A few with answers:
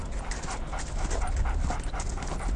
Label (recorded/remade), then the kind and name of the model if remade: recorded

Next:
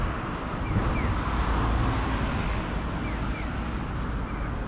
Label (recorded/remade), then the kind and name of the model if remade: recorded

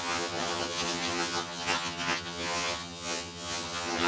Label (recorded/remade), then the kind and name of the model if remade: remade, vocoder, HiFi-GAN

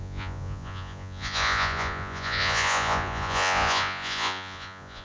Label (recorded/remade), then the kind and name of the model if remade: remade, vocoder, Vocos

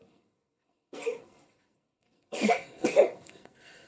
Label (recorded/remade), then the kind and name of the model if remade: remade, codec, SNAC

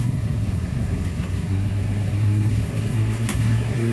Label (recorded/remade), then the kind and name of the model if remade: remade, codec, SNAC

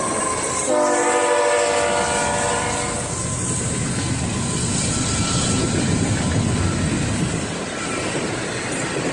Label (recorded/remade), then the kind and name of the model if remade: recorded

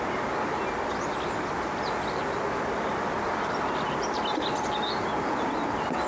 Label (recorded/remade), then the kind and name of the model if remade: recorded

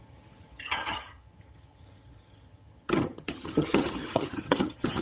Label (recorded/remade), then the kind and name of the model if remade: remade, vocoder, HiFi-GAN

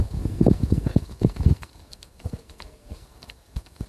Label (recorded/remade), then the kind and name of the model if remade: remade, codec, SNAC